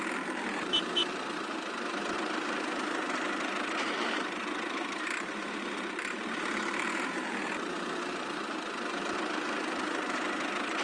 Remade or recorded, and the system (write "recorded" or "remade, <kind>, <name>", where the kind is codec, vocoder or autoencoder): remade, vocoder, BigVGAN v2